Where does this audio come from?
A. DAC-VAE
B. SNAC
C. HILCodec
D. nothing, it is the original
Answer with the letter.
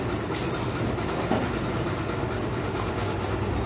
D